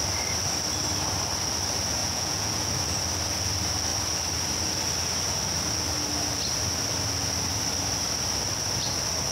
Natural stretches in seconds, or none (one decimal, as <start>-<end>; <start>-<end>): 0.0-2.0; 2.7-9.3